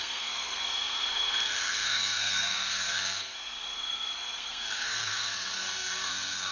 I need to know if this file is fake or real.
fake